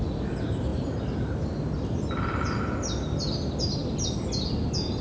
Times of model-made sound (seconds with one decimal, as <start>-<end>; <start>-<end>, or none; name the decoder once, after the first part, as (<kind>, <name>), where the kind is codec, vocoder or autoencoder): none